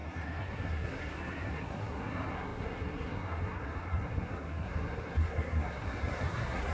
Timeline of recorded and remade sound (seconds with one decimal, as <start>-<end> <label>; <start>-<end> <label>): 0.0-6.7 remade